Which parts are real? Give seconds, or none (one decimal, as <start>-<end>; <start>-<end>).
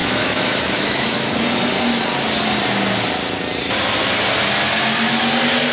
1.3-5.7